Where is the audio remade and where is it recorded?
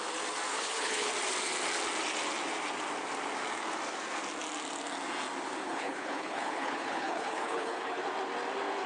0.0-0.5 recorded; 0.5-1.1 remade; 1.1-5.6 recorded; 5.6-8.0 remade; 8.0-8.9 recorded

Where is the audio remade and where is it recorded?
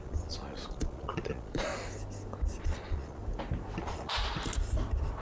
0.0-1.7 remade; 1.7-2.6 recorded; 2.6-3.2 remade; 3.2-3.8 recorded; 3.8-4.2 remade; 4.2-5.2 recorded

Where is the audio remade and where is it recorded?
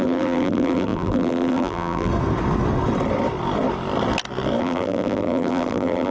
0.0-2.1 remade; 2.1-4.6 recorded; 4.6-6.1 remade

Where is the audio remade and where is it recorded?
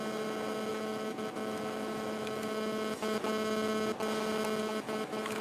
0.0-0.7 recorded; 0.7-3.9 remade; 3.9-4.6 recorded; 4.6-5.4 remade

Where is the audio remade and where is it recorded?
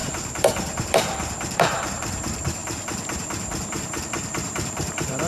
0.0-5.3 remade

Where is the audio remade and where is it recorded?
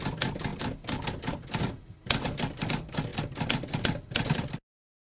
0.0-0.5 recorded; 0.5-1.2 remade; 1.2-5.2 recorded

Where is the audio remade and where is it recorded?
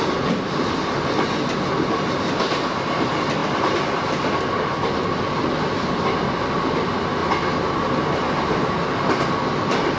0.0-10.0 recorded